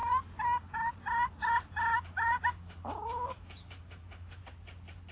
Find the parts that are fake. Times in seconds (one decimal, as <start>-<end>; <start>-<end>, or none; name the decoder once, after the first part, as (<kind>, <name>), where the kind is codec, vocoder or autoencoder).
1.9-4.4 (autoencoder, DAC-VAE)